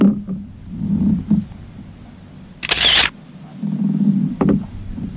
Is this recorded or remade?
recorded